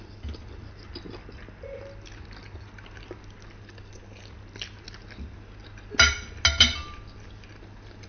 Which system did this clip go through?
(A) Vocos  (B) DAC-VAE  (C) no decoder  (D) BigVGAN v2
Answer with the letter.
C